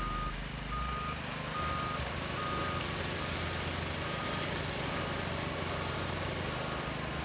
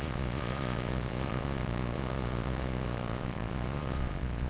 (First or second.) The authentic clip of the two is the first